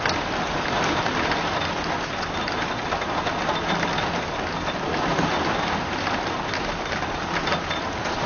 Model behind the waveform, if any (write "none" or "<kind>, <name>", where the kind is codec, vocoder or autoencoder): none